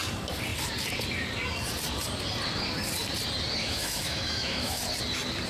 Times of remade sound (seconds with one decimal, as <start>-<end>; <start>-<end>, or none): 3.6-4.8